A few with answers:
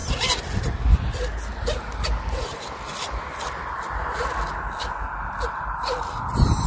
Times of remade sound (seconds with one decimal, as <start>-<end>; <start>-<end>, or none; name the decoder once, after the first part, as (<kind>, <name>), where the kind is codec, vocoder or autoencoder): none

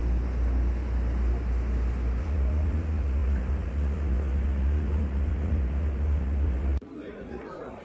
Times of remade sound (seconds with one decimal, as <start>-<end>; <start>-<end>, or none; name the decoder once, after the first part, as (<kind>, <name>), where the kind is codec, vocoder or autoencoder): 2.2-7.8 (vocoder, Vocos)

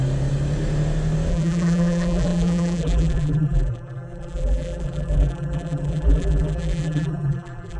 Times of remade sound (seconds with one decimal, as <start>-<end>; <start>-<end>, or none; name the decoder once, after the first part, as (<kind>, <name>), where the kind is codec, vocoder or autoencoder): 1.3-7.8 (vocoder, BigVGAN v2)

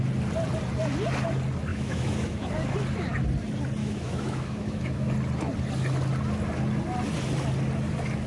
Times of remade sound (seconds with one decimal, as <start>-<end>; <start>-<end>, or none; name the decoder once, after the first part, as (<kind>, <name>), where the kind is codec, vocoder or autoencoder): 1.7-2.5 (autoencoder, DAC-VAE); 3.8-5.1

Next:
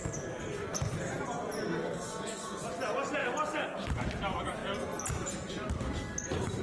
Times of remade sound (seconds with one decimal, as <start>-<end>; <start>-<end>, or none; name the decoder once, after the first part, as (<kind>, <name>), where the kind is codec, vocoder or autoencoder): 1.8-2.4 (codec, DAC); 3.2-3.9